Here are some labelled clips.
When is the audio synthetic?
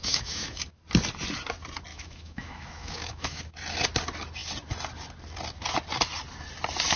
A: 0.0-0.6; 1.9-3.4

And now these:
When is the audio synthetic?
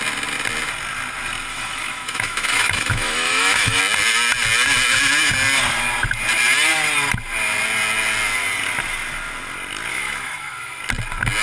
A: 1.5-3.8; 9.9-10.8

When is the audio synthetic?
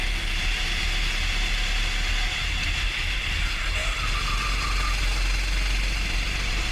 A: none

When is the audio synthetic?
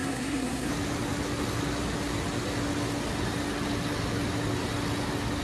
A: 0.0-0.7